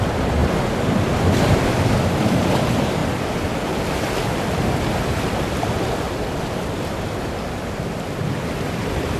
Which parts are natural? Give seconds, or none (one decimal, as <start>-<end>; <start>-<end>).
0.0-0.4; 2.4-3.0; 5.6-9.2